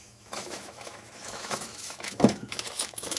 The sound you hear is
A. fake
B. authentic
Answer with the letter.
A